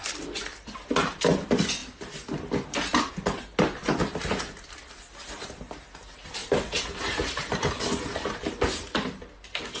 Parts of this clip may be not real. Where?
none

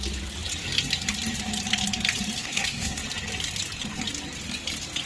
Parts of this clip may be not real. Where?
2.4-3.0 (codec, SNAC)

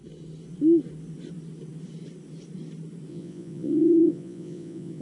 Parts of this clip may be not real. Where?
3.1-5.0 (vocoder, Vocos)